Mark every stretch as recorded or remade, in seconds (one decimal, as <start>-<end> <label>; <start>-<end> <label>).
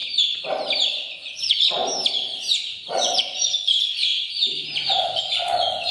0.0-1.1 recorded; 1.1-1.8 remade; 1.8-2.5 recorded; 2.5-4.1 remade; 4.1-5.2 recorded; 5.2-5.9 remade